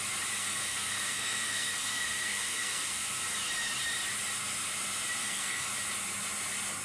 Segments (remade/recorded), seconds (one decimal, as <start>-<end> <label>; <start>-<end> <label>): 0.0-0.4 recorded; 0.4-3.2 remade; 3.2-5.2 recorded; 5.2-5.7 remade; 5.7-6.8 recorded